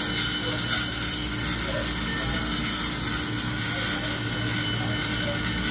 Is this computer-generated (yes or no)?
no